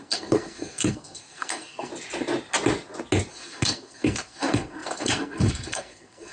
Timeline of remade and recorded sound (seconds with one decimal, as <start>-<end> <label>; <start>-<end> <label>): 0.0-1.9 remade; 1.9-3.3 recorded; 3.3-6.3 remade